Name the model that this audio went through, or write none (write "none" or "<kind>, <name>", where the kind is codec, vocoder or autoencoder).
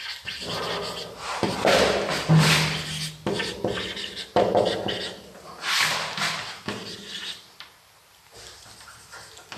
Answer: none